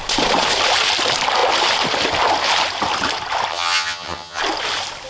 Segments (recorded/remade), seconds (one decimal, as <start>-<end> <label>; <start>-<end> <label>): 0.0-3.5 recorded; 3.5-4.4 remade; 4.4-5.1 recorded